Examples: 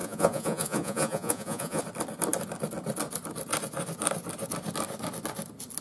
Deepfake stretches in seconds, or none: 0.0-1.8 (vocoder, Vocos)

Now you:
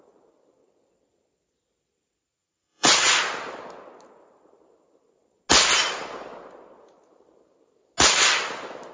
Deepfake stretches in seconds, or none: 2.3-3.2 (vocoder, Vocos)

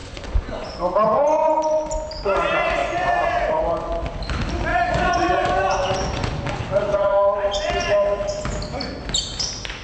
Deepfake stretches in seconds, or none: 0.0-1.6 (vocoder, Vocos); 2.8-3.6; 4.7-7.7

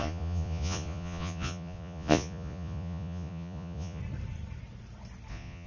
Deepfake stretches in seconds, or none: 0.0-4.0 (vocoder, Vocos); 5.3-5.7